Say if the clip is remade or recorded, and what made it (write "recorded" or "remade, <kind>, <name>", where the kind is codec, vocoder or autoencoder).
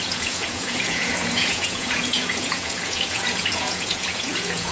remade, vocoder, Vocos